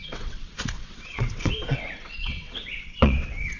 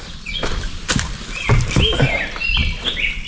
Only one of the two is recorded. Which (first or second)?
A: second